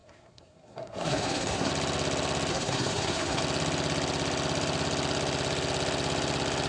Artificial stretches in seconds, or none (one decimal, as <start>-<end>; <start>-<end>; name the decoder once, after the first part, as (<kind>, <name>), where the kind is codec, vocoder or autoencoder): 0.0-1.7 (codec, SNAC); 2.5-3.4